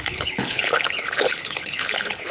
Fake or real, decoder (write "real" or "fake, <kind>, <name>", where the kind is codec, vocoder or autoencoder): fake, codec, HILCodec